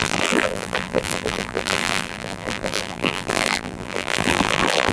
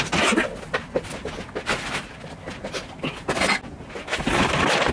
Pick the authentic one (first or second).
second